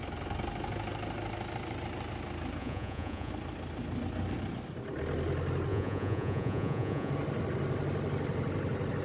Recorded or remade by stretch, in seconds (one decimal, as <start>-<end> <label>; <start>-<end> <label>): 0.0-2.6 recorded; 2.6-3.3 remade; 3.3-5.7 recorded; 5.7-7.1 remade; 7.1-9.0 recorded